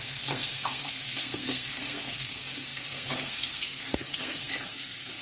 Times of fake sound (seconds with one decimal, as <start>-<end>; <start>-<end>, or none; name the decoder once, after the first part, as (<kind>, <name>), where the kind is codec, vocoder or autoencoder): 0.0-5.2 (codec, SNAC)